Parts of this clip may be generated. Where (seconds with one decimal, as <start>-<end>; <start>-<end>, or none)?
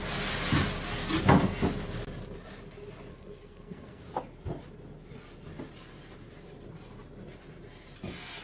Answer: 3.1-4.0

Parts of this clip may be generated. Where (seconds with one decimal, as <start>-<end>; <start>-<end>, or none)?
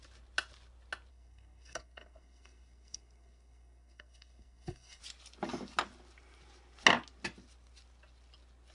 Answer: 1.1-5.0